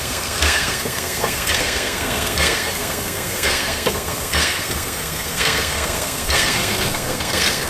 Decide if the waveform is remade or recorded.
remade